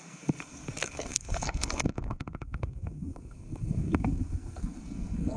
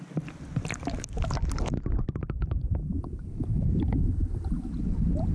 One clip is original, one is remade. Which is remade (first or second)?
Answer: first